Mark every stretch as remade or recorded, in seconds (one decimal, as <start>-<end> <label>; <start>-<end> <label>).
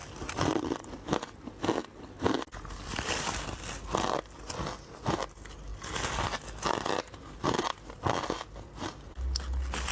0.0-9.9 recorded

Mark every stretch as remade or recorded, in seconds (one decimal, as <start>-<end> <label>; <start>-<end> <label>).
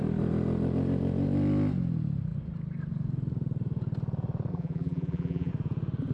0.0-4.5 recorded; 4.5-5.5 remade; 5.5-6.1 recorded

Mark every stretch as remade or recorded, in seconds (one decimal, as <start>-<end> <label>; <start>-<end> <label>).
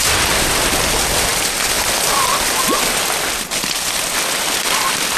0.0-5.2 recorded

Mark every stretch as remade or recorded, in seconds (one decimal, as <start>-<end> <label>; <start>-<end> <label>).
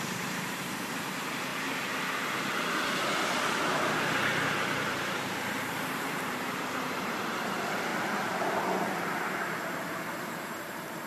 0.0-1.5 remade; 1.5-4.9 recorded; 4.9-11.1 remade